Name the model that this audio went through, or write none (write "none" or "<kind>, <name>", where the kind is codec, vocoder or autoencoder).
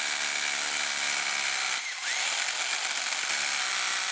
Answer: none